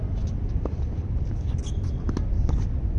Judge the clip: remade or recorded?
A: recorded